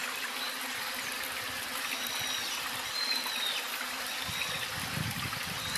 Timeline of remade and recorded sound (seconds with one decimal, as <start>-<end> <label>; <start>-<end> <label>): 0.0-5.8 recorded